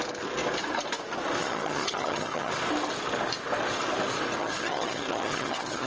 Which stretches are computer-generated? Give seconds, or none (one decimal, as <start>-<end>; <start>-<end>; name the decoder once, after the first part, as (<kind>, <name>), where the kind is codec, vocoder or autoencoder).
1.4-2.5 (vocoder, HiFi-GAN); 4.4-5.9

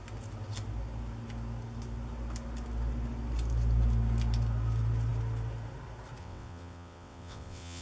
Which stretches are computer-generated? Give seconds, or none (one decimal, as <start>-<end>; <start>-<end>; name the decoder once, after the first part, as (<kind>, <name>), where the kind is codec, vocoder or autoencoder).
6.2-7.8 (vocoder, WaveNeXt)

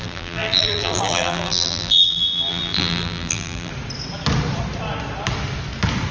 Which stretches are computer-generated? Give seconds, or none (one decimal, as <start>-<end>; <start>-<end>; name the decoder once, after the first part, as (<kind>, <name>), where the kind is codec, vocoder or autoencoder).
0.0-3.7 (vocoder, BigVGAN v2)